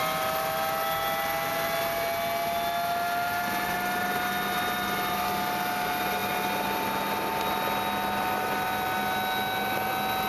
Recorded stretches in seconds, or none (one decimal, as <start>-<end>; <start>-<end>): 0.0-10.3